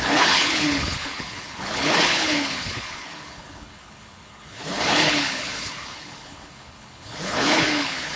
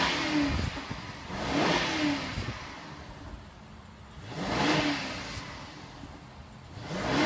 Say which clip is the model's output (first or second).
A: first